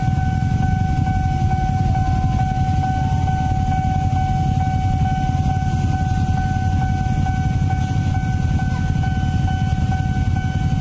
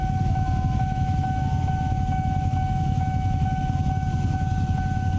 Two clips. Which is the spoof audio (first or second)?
second